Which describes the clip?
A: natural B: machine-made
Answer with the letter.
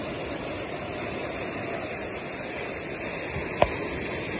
A